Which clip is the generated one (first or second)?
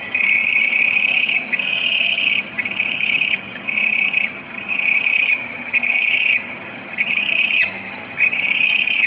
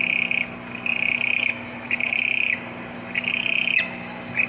first